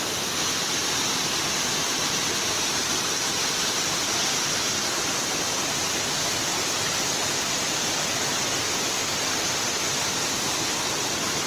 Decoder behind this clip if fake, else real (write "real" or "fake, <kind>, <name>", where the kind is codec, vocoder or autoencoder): real